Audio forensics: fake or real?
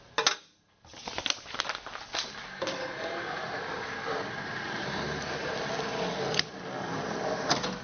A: real